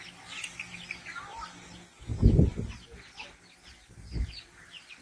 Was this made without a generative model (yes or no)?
yes